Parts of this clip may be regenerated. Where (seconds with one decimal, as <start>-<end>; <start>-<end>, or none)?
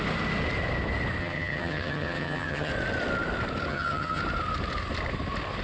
1.2-2.7; 3.7-4.2